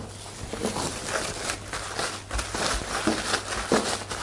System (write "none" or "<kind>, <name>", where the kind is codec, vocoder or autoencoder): none